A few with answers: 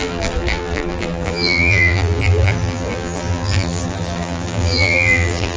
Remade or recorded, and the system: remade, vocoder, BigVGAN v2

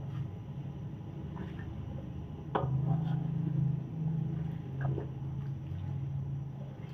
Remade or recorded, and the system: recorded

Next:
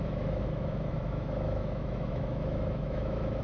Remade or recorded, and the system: remade, autoencoder, DAC-VAE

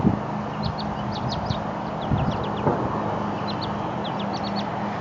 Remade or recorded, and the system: recorded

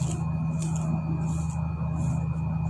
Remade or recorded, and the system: recorded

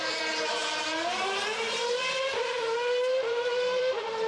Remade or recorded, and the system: remade, vocoder, BigVGAN v2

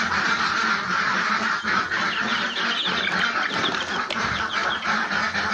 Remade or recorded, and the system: recorded